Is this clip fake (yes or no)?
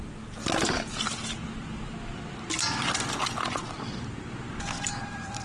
no